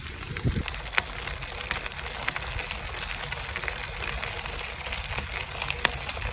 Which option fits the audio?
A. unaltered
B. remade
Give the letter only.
A